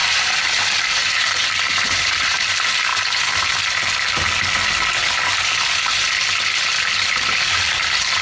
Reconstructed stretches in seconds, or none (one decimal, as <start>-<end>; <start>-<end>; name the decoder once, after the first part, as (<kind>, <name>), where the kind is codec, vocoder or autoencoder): 0.0-2.9 (vocoder, BigVGAN v2); 7.5-8.2